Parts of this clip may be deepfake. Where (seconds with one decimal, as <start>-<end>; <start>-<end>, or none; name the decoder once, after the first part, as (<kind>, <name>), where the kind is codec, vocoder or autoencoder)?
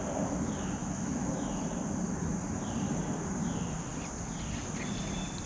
0.8-1.6 (autoencoder, DAC-VAE)